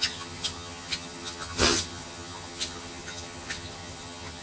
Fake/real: fake